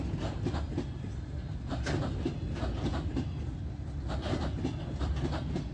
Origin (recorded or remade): recorded